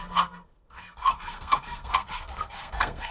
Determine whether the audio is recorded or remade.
remade